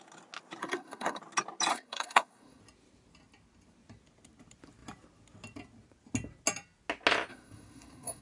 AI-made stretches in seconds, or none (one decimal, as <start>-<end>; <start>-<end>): 0.6-1.2; 1.7-2.6; 7.3-8.2